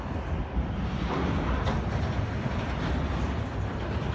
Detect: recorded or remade recorded